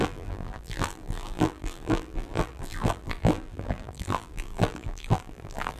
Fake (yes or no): yes